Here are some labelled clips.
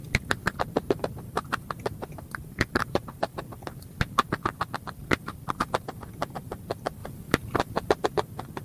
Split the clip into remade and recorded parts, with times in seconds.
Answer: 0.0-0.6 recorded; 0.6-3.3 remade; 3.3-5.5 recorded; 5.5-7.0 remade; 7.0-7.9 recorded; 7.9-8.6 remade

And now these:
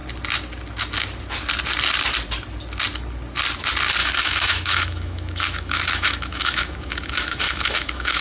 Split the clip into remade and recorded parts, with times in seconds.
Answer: 0.0-4.0 recorded; 4.0-8.2 remade

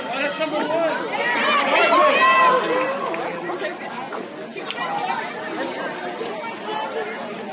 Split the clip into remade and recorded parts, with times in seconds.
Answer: 0.0-7.5 recorded

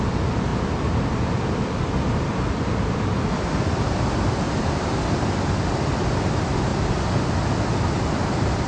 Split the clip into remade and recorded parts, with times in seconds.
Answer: 0.0-8.7 recorded

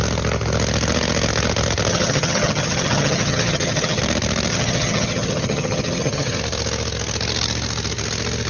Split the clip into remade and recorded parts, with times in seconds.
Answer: 0.0-1.9 recorded; 1.9-4.0 remade; 4.0-4.5 recorded; 4.5-6.4 remade; 6.4-8.5 recorded

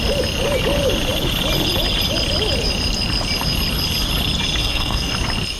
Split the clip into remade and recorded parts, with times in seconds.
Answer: 0.0-4.6 recorded; 4.6-5.1 remade; 5.1-5.6 recorded

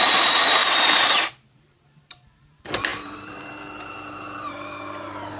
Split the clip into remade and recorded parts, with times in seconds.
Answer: 0.0-5.4 remade

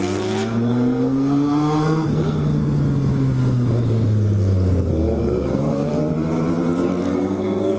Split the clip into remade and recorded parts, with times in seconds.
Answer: 0.0-2.6 remade; 2.6-4.9 recorded; 4.9-5.9 remade; 5.9-7.1 recorded; 7.1-7.8 remade